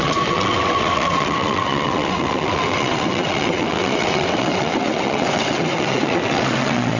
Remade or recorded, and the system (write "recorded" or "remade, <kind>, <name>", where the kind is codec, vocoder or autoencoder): remade, vocoder, WaveNeXt